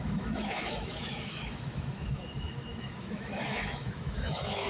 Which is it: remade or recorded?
remade